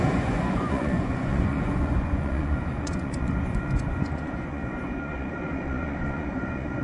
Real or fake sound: fake